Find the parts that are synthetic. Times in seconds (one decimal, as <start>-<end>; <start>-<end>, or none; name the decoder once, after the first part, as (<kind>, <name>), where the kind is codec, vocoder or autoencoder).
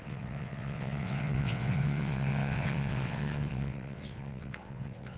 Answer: 0.0-5.2 (vocoder, WaveNeXt)